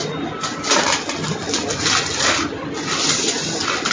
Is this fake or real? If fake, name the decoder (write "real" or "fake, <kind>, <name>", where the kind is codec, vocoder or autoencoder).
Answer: real